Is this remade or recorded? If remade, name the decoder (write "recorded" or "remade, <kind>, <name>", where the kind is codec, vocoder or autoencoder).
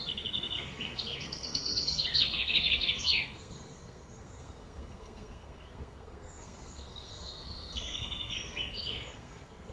remade, codec, SNAC